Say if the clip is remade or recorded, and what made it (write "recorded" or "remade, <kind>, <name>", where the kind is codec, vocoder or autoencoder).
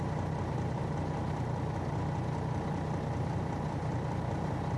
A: recorded